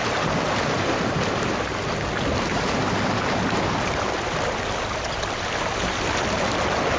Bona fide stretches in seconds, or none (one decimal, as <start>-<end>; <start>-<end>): 0.0-7.0